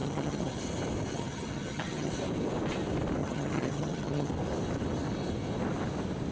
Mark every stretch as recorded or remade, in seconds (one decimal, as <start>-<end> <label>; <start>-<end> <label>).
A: 0.0-0.6 remade; 0.6-1.1 recorded; 1.1-2.1 remade; 2.1-3.2 recorded; 3.2-4.3 remade; 4.3-6.3 recorded